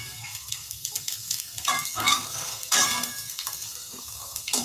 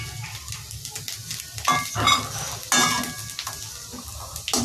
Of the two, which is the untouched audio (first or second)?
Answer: second